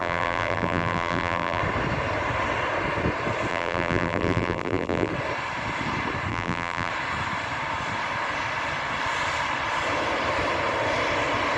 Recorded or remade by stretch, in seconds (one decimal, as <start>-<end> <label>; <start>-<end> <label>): 0.0-1.6 remade; 1.6-3.5 recorded; 3.5-5.1 remade; 5.1-6.3 recorded; 6.3-6.9 remade; 6.9-11.6 recorded